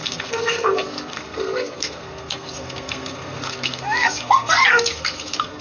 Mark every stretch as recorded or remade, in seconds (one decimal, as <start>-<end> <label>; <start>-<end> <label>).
0.0-5.6 remade